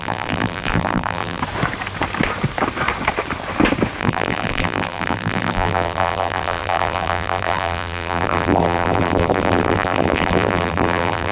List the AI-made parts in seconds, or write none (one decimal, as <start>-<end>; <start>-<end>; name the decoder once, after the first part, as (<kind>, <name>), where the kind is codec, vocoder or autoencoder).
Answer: 0.0-1.4 (vocoder, BigVGAN v2); 4.0-11.3